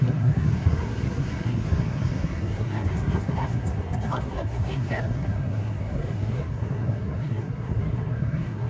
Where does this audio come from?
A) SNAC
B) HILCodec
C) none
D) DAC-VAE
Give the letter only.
A